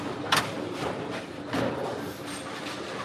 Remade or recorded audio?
recorded